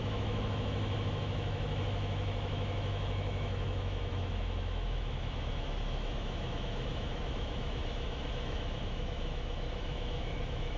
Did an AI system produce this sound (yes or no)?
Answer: yes